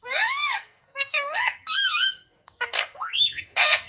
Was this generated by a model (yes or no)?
yes